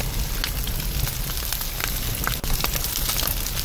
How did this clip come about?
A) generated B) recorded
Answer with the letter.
B